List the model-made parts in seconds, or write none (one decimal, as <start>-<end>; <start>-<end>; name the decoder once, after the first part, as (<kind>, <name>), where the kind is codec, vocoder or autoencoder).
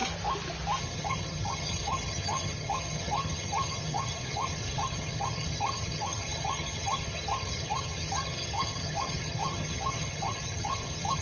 0.8-11.2 (vocoder, HiFi-GAN)